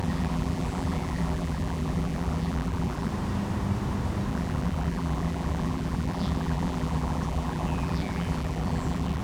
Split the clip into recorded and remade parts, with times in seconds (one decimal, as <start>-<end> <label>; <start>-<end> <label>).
0.0-3.1 remade; 3.1-4.3 recorded; 4.3-9.2 remade